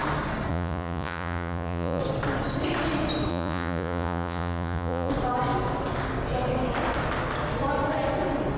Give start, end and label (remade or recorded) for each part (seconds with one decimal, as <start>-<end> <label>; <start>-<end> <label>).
0.0-0.5 recorded; 0.5-2.0 remade; 2.0-3.3 recorded; 3.3-5.1 remade; 5.1-8.6 recorded